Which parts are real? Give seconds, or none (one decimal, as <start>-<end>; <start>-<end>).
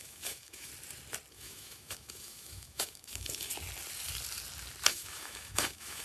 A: 0.7-1.3; 3.5-4.9